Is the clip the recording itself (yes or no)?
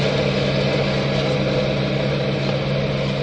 yes